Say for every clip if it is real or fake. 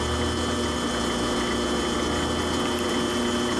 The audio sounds real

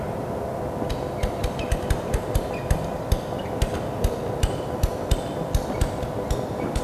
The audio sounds real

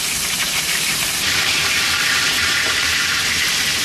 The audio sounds fake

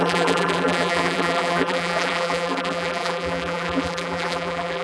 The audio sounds fake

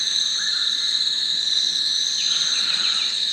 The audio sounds fake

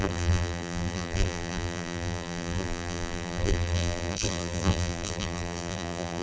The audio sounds fake